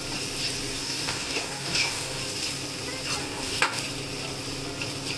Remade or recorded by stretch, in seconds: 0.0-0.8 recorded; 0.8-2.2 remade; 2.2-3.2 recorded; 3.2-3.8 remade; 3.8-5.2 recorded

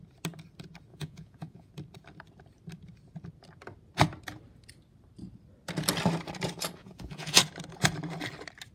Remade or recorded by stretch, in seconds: 0.0-0.9 recorded; 0.9-1.7 remade; 1.7-6.8 recorded; 6.8-7.4 remade; 7.4-8.7 recorded

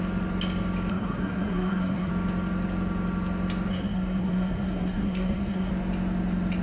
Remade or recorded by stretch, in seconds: 0.0-0.9 recorded; 0.9-2.1 remade; 2.1-3.7 recorded; 3.7-5.7 remade; 5.7-6.6 recorded